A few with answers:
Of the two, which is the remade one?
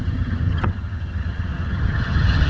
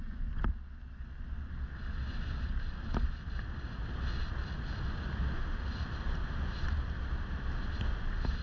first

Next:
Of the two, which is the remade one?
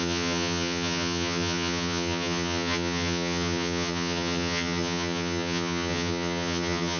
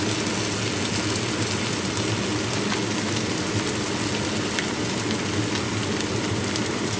first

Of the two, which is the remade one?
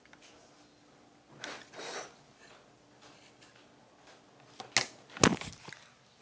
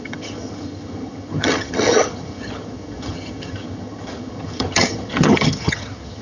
second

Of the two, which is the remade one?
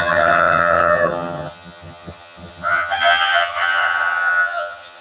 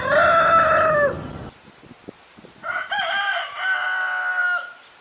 first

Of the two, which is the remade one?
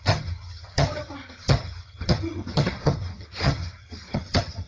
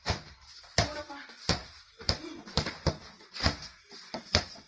first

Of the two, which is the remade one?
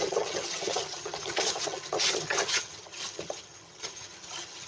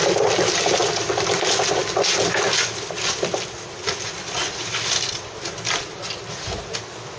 first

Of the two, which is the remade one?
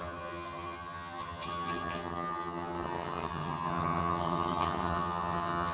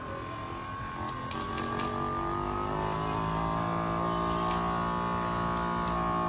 first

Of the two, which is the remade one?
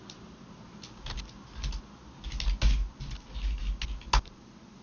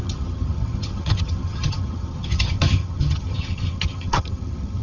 second